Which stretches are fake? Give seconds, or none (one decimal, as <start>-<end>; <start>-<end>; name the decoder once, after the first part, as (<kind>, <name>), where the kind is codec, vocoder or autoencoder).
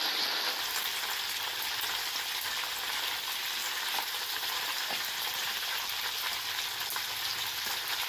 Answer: 3.6-5.9 (vocoder, BigVGAN v2)